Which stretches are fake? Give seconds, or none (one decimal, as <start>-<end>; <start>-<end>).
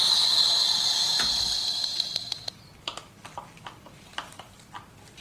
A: 1.1-3.2; 4.1-4.8